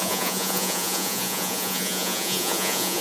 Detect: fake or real fake